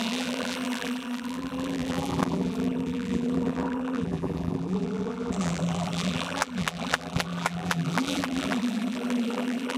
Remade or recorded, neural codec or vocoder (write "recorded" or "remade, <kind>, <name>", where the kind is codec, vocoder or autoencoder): remade, vocoder, BigVGAN v2